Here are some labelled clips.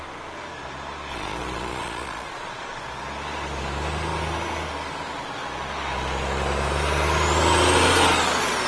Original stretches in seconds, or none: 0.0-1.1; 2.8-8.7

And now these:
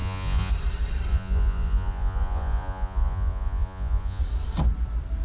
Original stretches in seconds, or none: 0.5-1.1; 4.2-5.2

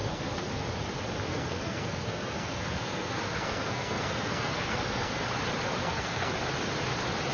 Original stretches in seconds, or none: 0.7-1.3; 5.2-5.8; 6.3-7.3